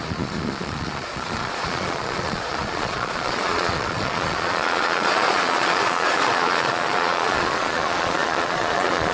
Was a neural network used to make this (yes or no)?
yes